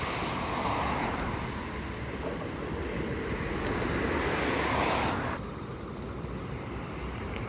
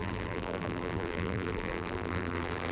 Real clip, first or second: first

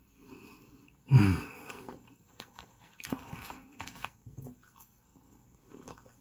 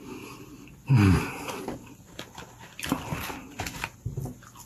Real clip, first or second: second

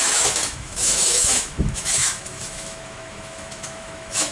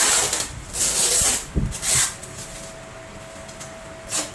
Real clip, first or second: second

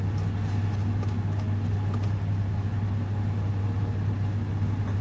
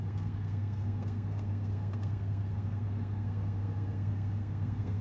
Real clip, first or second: first